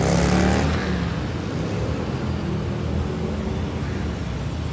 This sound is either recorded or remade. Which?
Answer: recorded